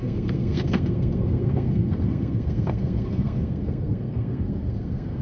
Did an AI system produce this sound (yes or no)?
yes